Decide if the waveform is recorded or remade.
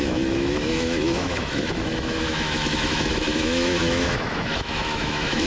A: remade